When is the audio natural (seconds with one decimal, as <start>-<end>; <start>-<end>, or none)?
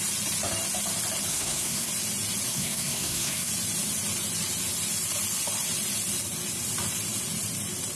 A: 0.0-1.3; 1.9-2.5; 3.5-8.0